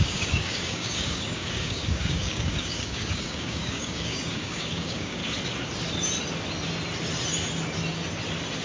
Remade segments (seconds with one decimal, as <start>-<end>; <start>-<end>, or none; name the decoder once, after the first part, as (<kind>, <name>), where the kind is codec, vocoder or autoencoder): 0.0-5.2 (codec, DAC)